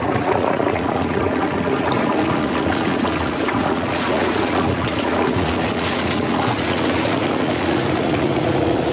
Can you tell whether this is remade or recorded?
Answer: remade